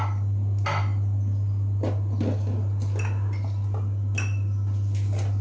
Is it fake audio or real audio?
real